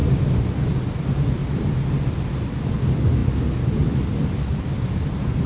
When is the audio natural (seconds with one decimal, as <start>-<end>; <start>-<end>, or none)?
0.0-5.5